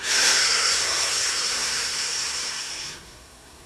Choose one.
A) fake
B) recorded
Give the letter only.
A